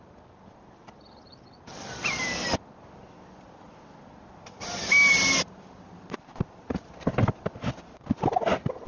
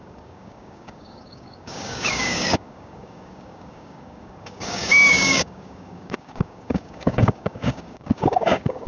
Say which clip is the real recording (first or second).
first